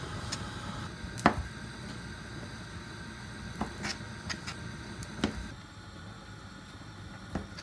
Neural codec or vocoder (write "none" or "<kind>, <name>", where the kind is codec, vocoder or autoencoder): none